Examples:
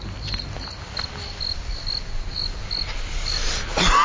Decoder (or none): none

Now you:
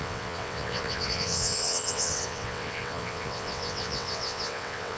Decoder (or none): vocoder, WaveNeXt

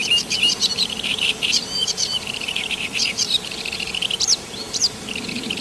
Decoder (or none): vocoder, BigVGAN v2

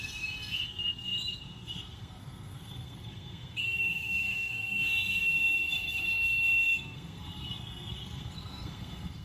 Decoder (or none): codec, SNAC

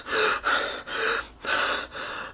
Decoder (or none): vocoder, BigVGAN v2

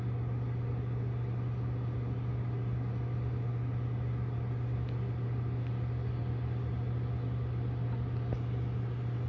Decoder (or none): none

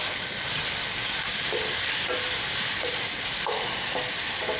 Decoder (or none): none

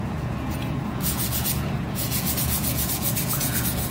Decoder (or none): vocoder, Vocos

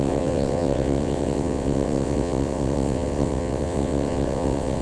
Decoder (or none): vocoder, WaveNeXt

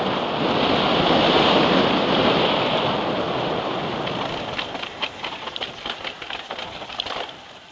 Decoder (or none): none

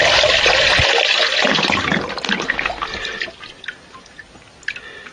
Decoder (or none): none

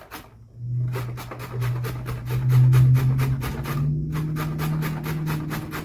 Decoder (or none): none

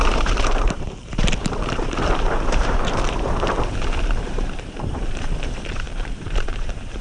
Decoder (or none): vocoder, BigVGAN v2